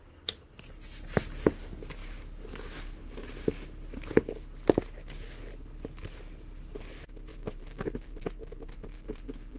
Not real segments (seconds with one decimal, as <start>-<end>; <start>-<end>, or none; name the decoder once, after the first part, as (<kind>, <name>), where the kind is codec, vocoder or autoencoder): 7.3-9.6 (vocoder, BigVGAN v2)